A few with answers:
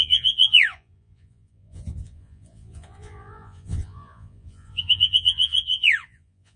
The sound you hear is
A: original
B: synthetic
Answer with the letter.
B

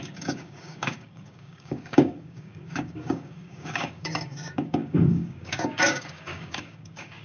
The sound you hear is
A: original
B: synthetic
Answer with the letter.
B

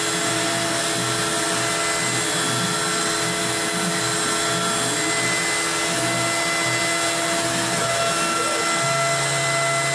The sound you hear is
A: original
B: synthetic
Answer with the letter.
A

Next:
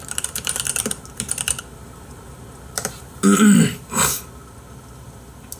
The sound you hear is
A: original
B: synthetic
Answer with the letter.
B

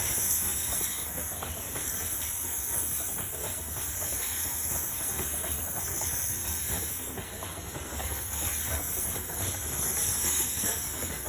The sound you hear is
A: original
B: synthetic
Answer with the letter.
B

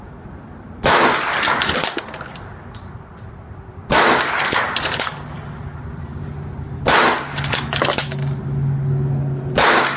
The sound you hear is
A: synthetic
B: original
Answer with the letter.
B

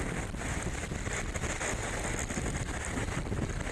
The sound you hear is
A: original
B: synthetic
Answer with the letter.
A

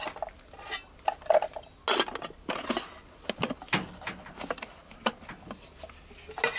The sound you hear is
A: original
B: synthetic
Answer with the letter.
A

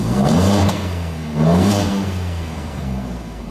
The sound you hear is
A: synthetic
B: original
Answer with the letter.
A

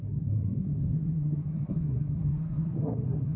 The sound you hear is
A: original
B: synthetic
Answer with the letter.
B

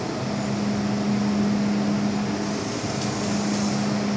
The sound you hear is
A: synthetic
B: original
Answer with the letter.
B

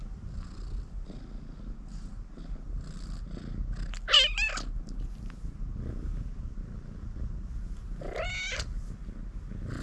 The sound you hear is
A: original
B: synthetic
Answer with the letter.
A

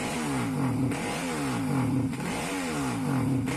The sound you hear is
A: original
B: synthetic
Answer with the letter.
A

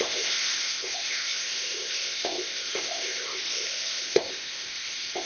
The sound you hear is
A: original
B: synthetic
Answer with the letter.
B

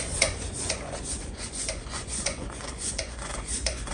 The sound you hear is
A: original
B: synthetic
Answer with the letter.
B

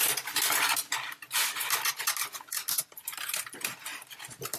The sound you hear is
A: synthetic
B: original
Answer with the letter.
B